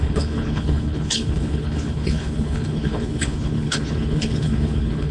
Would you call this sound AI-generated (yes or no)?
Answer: yes